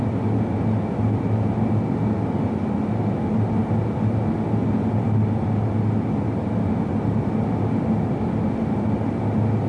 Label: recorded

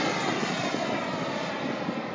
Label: recorded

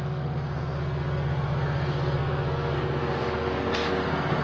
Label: remade